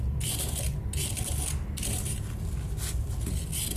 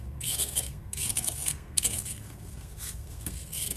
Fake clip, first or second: second